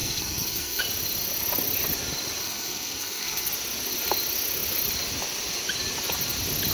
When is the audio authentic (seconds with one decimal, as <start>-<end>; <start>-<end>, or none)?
0.8-2.4; 3.5-6.7